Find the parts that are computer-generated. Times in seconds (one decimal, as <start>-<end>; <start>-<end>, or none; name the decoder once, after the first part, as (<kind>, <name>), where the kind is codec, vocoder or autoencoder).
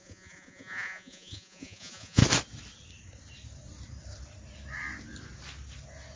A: 0.0-2.2 (vocoder, Vocos)